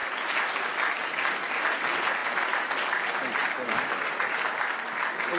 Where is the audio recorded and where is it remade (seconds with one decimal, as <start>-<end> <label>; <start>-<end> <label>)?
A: 0.0-5.4 recorded